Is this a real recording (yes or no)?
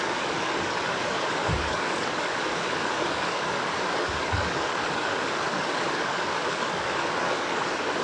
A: no